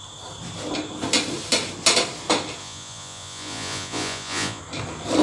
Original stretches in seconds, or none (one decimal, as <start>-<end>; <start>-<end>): 0.0-2.6; 4.6-5.2